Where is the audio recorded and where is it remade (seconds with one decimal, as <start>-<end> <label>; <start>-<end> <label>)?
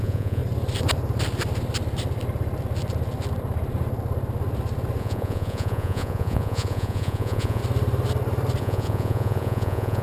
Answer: 0.0-0.4 remade; 0.4-5.0 recorded; 5.0-7.6 remade; 7.6-8.6 recorded; 8.6-10.0 remade